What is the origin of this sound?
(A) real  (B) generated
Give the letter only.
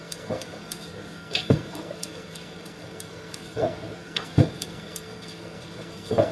B